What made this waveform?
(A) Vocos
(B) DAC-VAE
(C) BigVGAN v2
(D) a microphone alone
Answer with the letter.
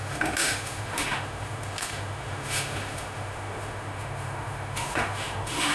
B